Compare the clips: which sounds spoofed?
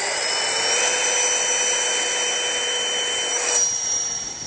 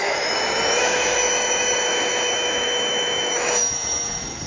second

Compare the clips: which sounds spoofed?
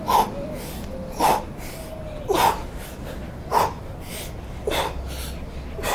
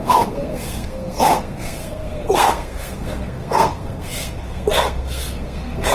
second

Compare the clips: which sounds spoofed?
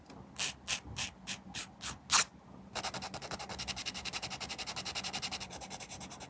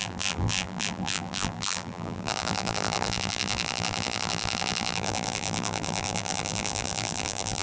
second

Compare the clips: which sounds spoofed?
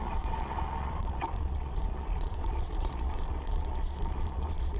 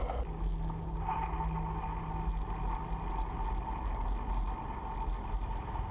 first